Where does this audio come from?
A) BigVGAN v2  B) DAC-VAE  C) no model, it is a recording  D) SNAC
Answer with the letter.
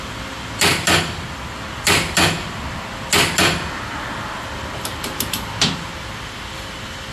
C